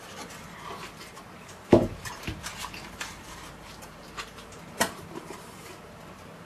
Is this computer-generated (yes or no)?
yes